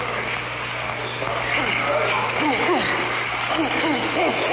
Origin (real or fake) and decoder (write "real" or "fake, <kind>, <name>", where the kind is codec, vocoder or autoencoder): real